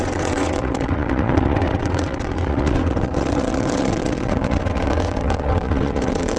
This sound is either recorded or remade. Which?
remade